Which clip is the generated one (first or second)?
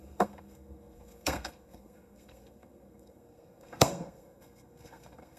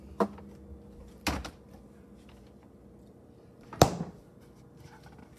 first